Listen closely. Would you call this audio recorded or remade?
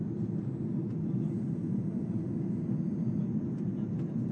recorded